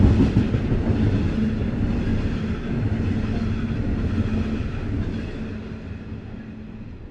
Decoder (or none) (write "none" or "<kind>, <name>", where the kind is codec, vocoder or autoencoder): none